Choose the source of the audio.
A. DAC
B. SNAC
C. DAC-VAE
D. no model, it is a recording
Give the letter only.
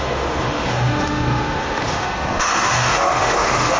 C